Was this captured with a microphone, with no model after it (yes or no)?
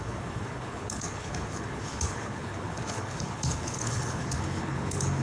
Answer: no